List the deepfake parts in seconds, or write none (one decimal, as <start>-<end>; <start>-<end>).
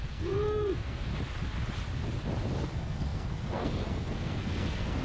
0.0-1.1; 2.6-5.0